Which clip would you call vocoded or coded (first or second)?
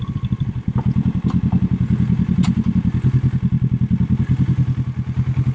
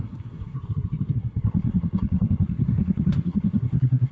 second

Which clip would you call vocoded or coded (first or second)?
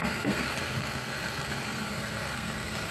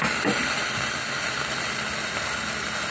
first